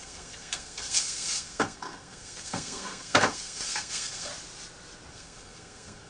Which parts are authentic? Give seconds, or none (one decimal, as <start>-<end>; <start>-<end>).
4.3-5.1